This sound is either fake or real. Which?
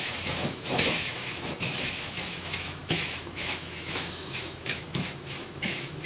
fake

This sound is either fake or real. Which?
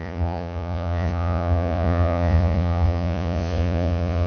fake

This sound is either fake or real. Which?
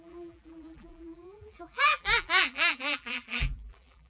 fake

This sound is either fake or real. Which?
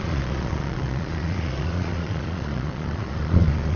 fake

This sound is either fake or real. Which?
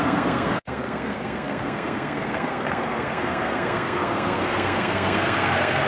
fake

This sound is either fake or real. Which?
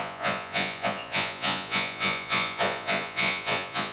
fake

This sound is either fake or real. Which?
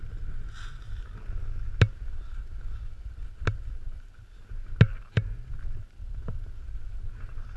real